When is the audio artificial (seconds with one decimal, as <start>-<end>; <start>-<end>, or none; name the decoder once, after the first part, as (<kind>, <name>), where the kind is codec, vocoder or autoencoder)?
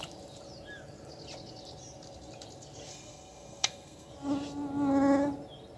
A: 2.9-4.1 (codec, SNAC)